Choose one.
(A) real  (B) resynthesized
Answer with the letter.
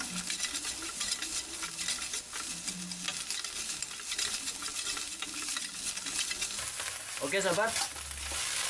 A